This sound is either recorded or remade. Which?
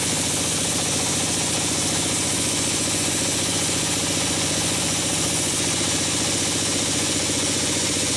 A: remade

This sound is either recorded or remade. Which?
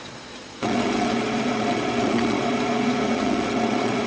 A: remade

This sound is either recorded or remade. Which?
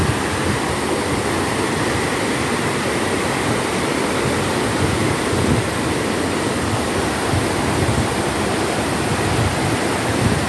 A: recorded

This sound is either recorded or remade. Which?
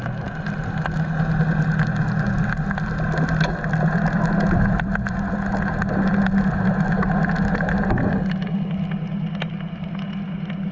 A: recorded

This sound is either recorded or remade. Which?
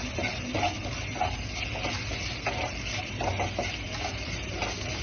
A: recorded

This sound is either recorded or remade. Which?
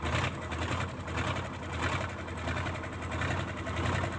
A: recorded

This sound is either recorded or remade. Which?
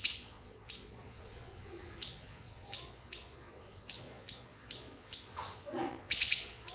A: remade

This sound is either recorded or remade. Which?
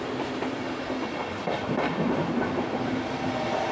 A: recorded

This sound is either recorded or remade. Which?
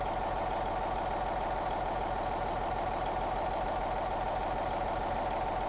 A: recorded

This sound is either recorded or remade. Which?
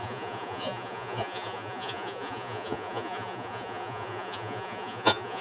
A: remade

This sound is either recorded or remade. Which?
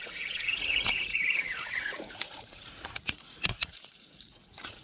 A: remade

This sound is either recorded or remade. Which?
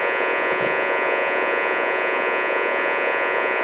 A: remade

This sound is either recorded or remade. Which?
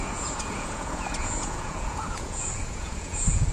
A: remade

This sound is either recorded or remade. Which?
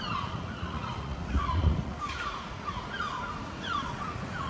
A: remade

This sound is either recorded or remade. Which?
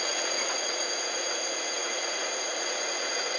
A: remade